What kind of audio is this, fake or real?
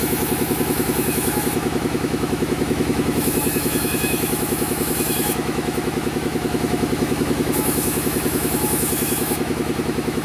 fake